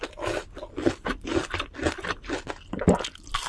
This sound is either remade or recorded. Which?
recorded